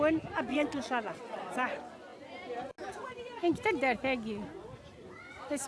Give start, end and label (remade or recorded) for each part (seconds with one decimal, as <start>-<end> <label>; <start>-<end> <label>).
0.0-0.5 recorded; 0.5-1.4 remade; 1.4-5.7 recorded